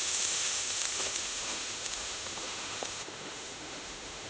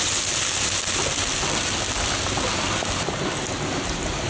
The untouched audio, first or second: second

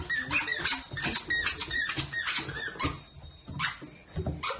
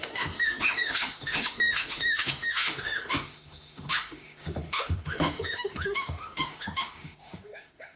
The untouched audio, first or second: first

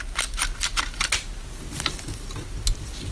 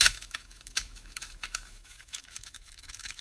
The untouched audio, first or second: first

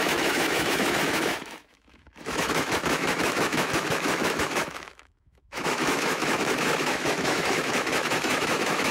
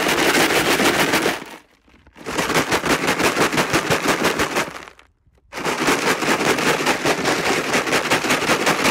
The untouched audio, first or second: second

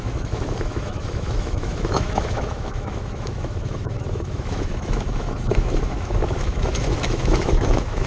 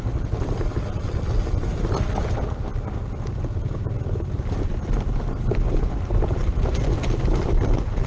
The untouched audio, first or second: second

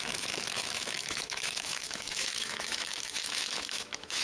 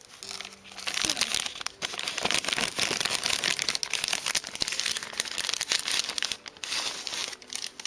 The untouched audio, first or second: second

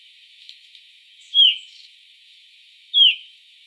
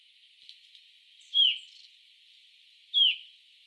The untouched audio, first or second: second